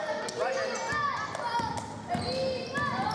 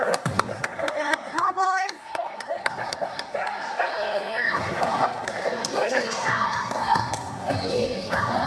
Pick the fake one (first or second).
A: second